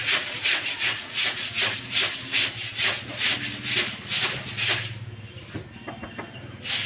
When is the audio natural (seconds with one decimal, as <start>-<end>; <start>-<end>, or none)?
1.8-6.9